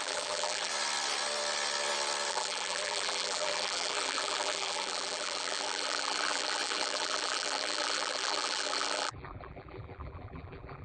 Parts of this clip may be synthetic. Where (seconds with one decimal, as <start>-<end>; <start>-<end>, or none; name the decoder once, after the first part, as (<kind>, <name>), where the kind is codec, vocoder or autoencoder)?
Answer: 0.0-0.7 (vocoder, BigVGAN v2); 2.3-10.8